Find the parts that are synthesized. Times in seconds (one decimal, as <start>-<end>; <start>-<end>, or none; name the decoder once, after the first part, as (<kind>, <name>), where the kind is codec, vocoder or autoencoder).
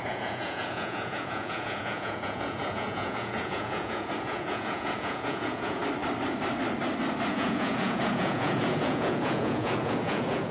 0.0-5.8 (vocoder, Vocos); 7.3-10.5